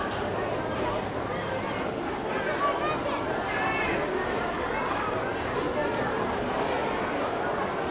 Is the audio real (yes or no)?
yes